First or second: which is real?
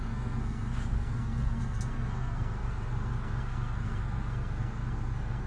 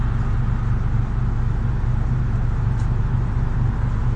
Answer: second